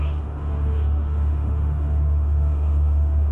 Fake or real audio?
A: fake